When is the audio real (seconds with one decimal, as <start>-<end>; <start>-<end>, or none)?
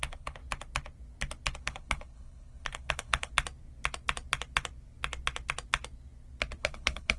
0.4-1.6; 3.3-6.6